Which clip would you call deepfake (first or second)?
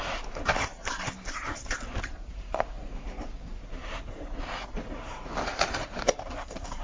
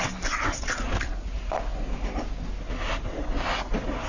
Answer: first